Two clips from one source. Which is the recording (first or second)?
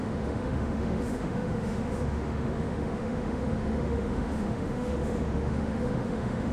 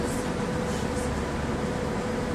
second